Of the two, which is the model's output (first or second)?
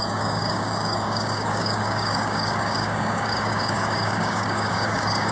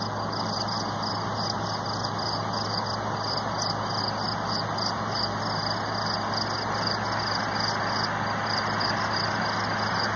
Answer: first